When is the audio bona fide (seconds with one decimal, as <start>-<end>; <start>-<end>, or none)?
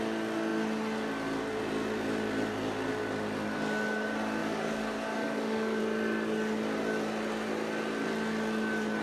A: 0.0-4.4; 5.8-9.0